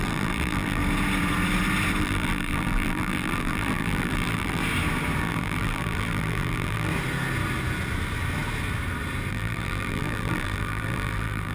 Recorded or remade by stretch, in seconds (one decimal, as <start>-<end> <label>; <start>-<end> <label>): 0.0-0.8 remade; 0.8-2.0 recorded; 2.0-4.6 remade; 4.6-5.2 recorded; 5.2-6.9 remade; 6.9-9.3 recorded; 9.3-11.5 remade